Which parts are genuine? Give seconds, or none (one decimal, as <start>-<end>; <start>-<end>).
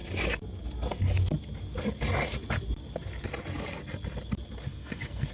0.0-4.7